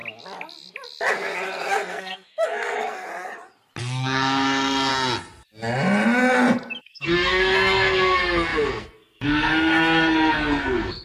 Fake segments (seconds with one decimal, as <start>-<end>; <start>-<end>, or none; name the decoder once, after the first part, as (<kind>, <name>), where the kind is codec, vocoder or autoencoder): 1.1-3.1 (codec, SNAC); 3.8-4.9; 6.8-11.0